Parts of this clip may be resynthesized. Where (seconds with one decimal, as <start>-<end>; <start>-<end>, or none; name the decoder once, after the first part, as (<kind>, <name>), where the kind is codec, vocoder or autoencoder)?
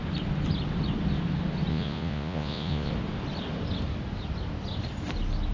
1.7-2.9 (vocoder, Vocos)